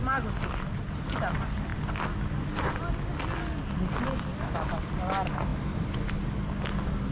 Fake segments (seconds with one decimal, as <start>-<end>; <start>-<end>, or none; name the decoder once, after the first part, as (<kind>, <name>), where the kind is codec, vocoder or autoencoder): 5.5-6.1 (vocoder, BigVGAN v2)